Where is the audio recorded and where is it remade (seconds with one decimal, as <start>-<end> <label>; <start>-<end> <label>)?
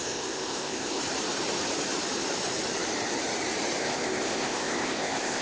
0.0-1.0 remade; 1.0-3.8 recorded; 3.8-5.4 remade